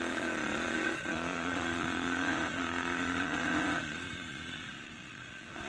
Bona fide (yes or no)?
no